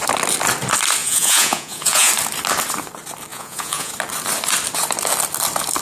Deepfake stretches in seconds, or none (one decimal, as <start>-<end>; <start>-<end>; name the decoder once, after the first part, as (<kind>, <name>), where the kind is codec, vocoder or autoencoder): 1.0-2.1 (vocoder, Vocos); 3.3-3.9